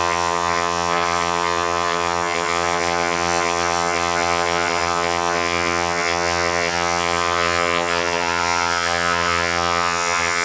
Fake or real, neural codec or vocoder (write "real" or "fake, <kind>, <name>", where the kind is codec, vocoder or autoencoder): fake, vocoder, HiFi-GAN